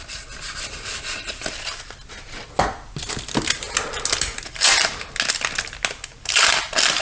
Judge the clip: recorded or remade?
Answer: recorded